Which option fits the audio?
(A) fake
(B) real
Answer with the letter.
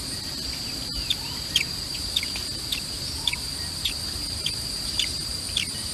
A